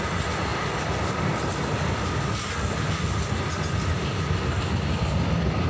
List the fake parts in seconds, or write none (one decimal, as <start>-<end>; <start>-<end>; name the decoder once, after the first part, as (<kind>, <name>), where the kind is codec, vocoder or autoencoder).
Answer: none